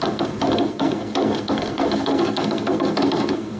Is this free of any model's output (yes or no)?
no